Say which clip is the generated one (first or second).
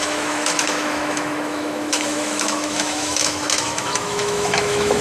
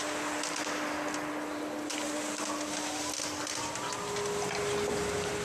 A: first